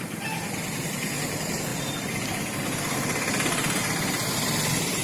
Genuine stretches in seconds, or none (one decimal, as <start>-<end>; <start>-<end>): 0.0-5.0